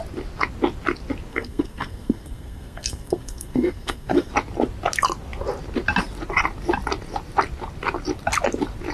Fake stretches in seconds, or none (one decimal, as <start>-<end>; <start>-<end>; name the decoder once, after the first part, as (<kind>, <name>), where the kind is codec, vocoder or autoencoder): 1.3-4.3 (codec, SNAC)